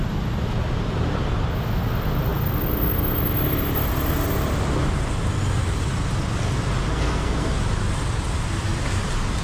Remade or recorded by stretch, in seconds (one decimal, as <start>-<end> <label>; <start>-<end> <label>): 0.0-6.9 recorded; 6.9-7.6 remade; 7.6-9.4 recorded